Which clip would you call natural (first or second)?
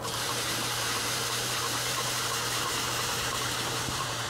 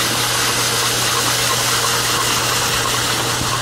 second